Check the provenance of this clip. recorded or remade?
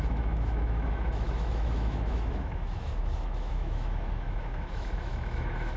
remade